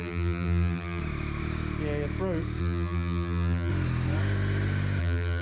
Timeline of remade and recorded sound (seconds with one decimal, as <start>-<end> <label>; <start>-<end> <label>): 0.0-1.0 remade; 1.0-2.6 recorded; 2.6-3.7 remade; 3.7-5.0 recorded; 5.0-5.4 remade